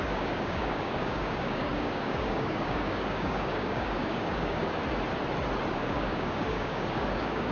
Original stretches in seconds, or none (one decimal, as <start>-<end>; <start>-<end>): 4.8-5.7